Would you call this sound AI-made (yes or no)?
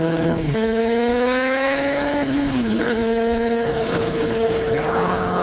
yes